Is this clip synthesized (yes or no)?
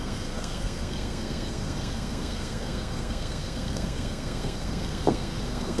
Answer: yes